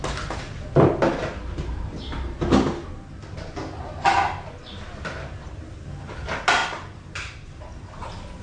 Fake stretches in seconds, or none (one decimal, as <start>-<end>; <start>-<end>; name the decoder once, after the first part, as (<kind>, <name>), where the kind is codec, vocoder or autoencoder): none